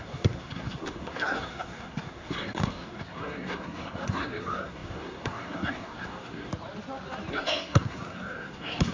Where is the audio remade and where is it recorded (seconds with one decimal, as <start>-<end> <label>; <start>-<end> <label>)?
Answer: 0.0-6.5 remade; 6.5-7.3 recorded; 7.3-8.9 remade